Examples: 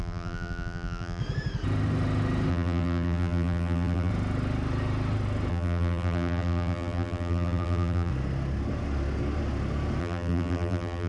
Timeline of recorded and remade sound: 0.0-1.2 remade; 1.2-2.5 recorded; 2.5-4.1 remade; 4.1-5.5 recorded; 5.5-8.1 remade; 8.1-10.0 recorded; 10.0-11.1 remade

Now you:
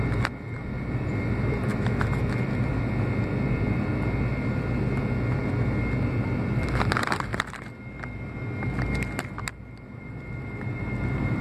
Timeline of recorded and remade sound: 0.0-1.7 remade; 1.7-6.4 recorded; 6.4-7.3 remade; 7.3-9.5 recorded; 9.5-11.4 remade

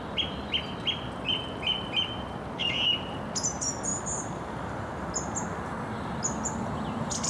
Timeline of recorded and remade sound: 0.0-2.6 recorded; 2.6-3.2 remade; 3.2-3.9 recorded; 3.9-4.9 remade; 4.9-7.3 recorded

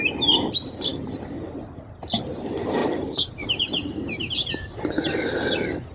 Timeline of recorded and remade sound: 0.0-2.8 recorded; 2.8-5.0 remade; 5.0-5.9 recorded

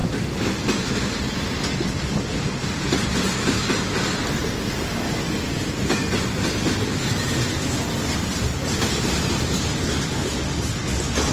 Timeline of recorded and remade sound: 0.0-11.3 recorded